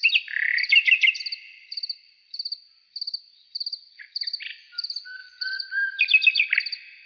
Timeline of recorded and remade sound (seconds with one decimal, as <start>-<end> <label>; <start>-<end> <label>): 0.0-0.5 recorded; 0.5-1.1 remade; 1.1-5.2 recorded; 5.2-6.0 remade; 6.0-7.1 recorded